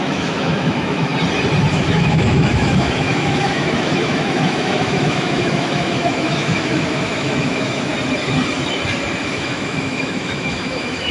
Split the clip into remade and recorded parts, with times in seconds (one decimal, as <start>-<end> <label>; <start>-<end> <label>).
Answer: 0.0-1.1 remade; 1.1-1.7 recorded; 1.7-7.9 remade; 7.9-9.3 recorded; 9.3-11.1 remade